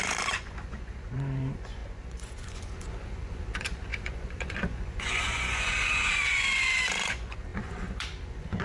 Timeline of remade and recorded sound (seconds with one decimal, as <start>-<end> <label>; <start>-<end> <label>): 0.0-8.6 remade